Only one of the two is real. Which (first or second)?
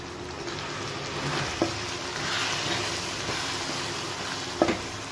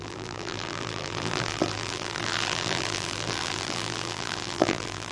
first